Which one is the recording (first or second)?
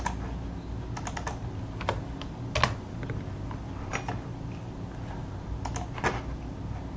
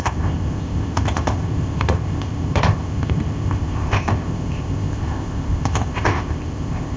first